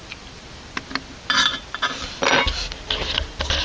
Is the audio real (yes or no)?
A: yes